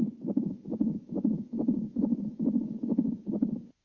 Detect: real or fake fake